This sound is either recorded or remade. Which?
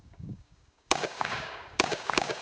remade